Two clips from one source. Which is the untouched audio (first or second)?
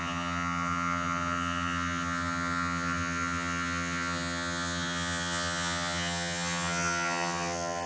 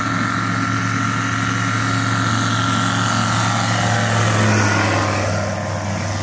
second